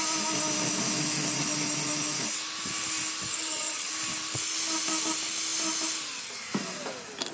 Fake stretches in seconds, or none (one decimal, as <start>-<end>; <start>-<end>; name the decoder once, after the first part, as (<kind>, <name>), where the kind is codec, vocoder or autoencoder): 3.3-3.9 (vocoder, HiFi-GAN)